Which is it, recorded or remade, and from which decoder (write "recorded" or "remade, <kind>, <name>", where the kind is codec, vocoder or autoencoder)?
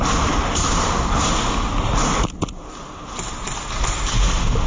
recorded